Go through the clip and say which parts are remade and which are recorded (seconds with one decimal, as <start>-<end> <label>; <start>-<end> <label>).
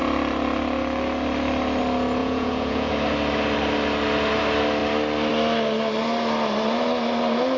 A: 0.0-2.2 recorded; 2.2-2.9 remade; 2.9-7.6 recorded